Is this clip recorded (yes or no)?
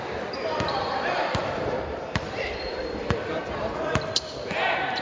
no